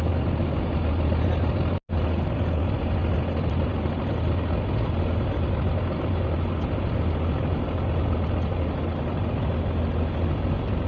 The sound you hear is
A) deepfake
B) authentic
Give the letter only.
B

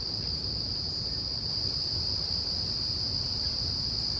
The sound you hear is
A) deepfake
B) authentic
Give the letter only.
B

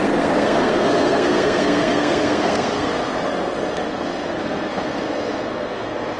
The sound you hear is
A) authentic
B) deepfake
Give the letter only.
B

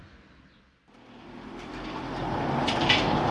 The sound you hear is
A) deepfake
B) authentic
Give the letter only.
B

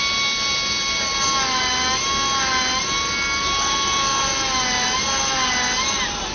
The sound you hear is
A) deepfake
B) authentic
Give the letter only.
B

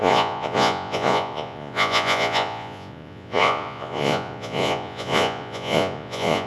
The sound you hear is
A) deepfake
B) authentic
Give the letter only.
A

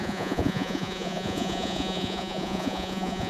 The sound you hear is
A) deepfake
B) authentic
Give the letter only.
A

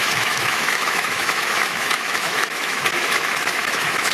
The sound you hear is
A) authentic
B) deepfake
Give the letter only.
B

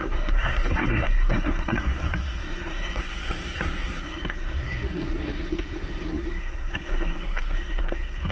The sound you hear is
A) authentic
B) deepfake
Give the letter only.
B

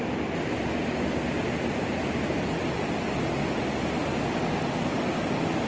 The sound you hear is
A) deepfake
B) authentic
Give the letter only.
B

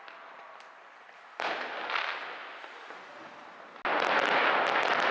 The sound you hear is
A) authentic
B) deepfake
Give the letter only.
A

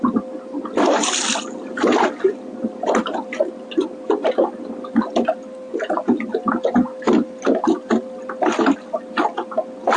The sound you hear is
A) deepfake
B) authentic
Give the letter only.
B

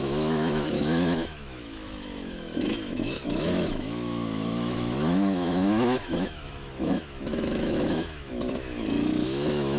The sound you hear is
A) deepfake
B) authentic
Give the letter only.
A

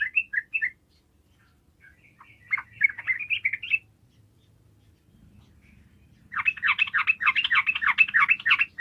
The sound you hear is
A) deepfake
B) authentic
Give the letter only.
B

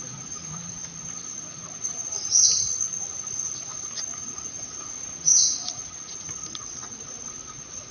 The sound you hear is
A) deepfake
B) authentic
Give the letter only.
A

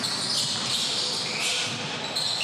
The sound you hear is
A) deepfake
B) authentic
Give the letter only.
B